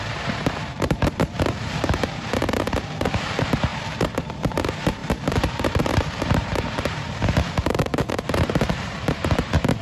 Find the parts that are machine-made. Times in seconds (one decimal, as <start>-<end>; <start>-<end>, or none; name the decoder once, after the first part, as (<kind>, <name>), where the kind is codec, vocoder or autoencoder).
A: 0.0-2.4 (vocoder, BigVGAN v2); 3.2-9.8